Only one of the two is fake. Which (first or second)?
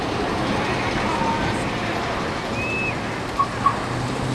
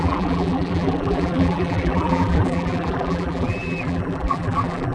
second